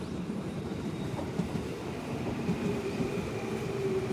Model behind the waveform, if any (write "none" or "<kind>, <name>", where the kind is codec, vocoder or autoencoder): vocoder, BigVGAN v2